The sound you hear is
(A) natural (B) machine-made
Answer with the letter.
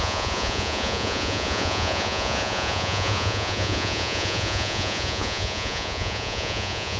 B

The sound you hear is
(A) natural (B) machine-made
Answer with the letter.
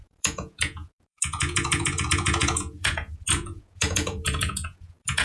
B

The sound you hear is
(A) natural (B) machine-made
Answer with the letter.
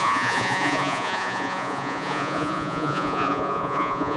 B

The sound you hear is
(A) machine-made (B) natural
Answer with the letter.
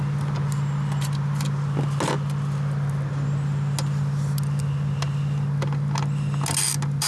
B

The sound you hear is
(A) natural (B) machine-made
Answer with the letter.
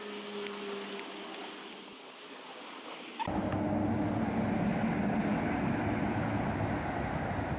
A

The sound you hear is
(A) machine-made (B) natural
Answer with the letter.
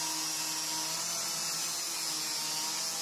B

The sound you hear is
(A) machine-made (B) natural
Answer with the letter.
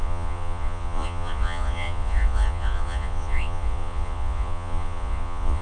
A